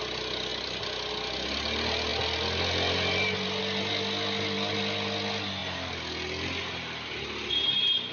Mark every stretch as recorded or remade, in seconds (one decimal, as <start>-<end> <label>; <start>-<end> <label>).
0.0-8.1 recorded